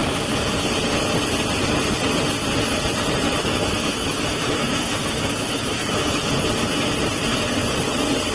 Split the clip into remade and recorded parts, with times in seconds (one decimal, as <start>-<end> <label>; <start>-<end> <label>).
0.0-3.4 recorded; 3.4-6.3 remade; 6.3-8.3 recorded